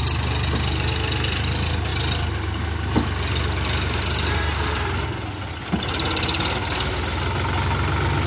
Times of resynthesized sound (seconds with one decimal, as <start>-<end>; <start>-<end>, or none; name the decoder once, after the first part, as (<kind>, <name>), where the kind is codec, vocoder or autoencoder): none